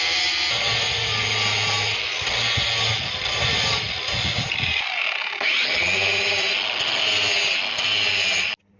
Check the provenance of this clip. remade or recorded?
recorded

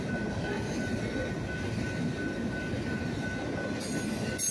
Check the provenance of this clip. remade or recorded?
recorded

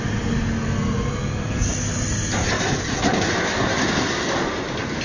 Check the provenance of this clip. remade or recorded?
recorded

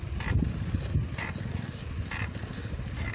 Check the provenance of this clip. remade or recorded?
recorded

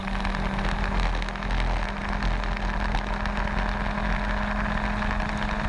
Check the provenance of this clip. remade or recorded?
recorded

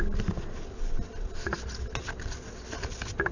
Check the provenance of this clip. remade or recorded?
recorded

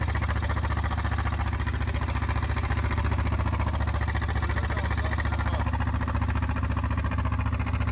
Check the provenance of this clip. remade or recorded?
recorded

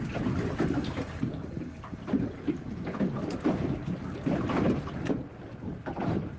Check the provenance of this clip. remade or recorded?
recorded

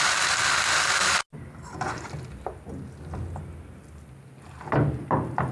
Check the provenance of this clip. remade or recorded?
recorded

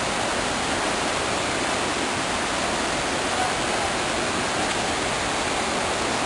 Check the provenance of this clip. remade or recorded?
recorded